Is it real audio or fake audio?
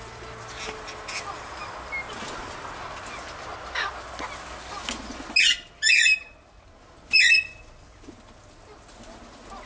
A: real